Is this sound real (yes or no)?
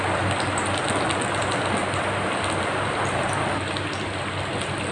yes